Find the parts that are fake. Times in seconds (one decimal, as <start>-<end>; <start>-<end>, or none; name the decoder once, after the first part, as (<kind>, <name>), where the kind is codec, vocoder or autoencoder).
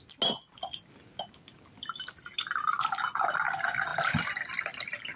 none